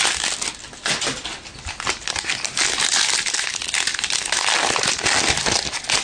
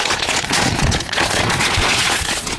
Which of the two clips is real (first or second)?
first